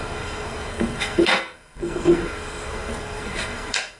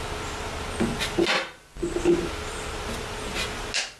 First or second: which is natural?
second